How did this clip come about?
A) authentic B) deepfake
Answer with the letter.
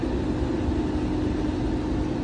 A